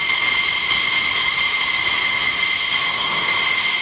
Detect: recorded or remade recorded